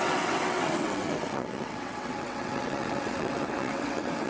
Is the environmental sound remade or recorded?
remade